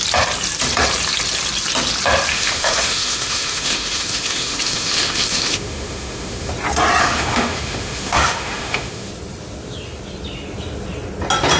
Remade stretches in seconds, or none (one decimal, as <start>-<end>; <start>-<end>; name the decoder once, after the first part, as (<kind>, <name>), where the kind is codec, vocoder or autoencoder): 2.3-6.5 (autoencoder, DAC-VAE); 7.0-9.1